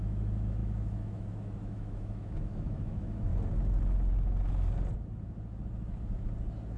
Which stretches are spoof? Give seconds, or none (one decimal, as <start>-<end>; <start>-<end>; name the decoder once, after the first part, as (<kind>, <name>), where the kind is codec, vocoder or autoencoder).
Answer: 0.0-3.3 (autoencoder, DAC-VAE)